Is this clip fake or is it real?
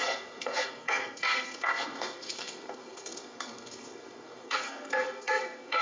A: fake